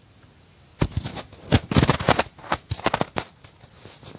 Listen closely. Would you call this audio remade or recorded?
recorded